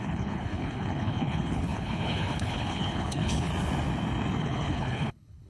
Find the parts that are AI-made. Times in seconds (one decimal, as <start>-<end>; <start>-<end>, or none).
0.0-3.5; 4.4-5.5

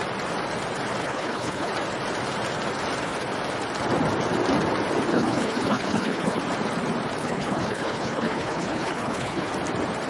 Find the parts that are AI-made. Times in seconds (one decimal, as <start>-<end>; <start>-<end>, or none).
1.0-1.7; 5.1-6.4; 7.2-9.5

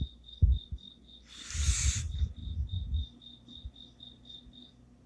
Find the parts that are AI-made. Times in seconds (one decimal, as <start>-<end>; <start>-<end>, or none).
none

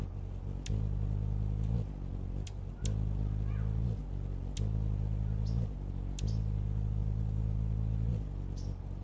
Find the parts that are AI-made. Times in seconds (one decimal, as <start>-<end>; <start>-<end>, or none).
none